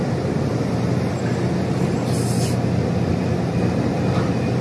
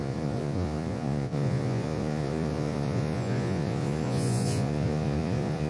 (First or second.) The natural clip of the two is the first